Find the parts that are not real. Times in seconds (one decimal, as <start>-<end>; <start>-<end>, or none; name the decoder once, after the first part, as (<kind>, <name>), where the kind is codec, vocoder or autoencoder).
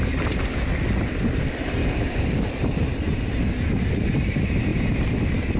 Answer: 1.8-2.5 (codec, DAC)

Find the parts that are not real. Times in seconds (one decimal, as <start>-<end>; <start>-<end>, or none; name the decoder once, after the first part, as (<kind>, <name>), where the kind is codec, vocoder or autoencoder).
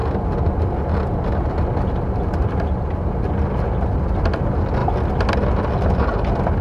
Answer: none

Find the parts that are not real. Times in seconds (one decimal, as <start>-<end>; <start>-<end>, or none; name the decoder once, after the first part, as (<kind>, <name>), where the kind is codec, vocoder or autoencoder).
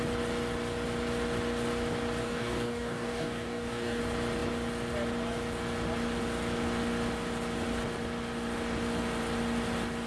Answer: 2.2-4.0 (codec, DAC)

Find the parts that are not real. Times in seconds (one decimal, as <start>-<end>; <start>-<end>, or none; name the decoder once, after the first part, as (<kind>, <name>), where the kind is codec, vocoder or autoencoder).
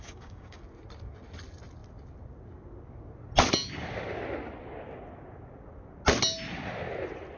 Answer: 0.0-0.6 (codec, DAC)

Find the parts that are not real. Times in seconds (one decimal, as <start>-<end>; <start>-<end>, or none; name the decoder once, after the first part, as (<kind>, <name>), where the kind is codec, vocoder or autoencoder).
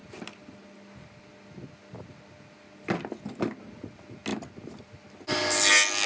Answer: none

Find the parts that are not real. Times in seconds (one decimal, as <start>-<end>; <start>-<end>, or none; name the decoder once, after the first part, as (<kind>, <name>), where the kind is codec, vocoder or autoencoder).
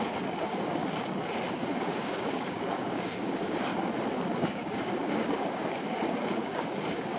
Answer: 0.0-0.8 (codec, DAC); 1.5-3.7; 4.4-7.2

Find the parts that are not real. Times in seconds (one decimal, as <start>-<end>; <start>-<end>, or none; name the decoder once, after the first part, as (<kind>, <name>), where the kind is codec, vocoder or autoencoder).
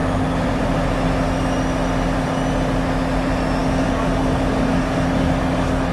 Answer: 3.6-5.9 (codec, DAC)